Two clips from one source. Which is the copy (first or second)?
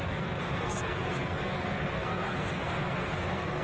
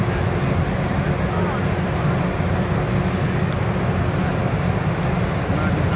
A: first